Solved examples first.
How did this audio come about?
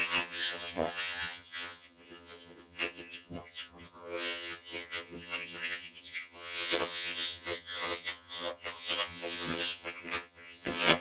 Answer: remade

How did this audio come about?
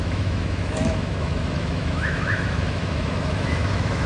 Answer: remade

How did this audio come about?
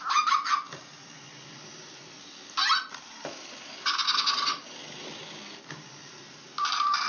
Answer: recorded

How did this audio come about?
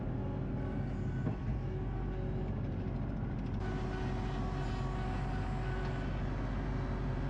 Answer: recorded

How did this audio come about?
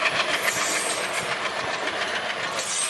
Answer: recorded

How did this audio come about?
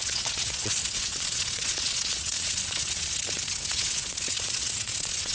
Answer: remade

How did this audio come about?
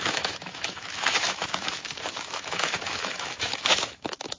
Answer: remade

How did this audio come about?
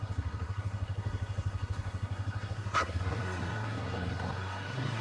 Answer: remade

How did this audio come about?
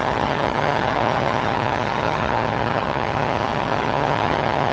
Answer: remade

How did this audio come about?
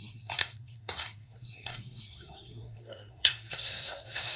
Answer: remade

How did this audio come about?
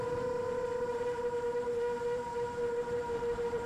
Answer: remade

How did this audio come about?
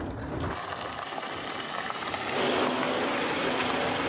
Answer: recorded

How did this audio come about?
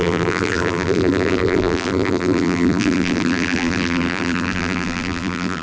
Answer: remade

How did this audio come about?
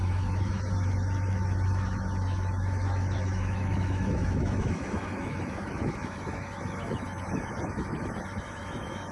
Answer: remade